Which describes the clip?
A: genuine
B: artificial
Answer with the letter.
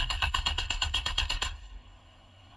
B